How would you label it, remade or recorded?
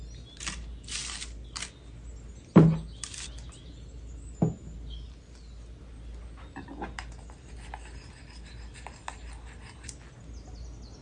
recorded